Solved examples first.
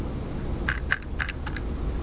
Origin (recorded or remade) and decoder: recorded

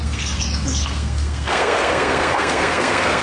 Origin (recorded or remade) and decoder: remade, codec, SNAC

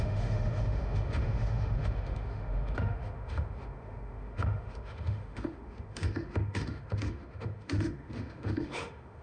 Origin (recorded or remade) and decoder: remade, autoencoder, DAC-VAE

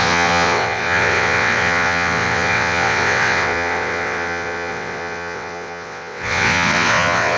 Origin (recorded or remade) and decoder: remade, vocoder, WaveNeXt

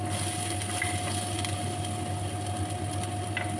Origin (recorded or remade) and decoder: recorded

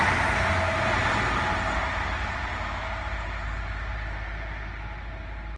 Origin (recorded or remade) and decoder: recorded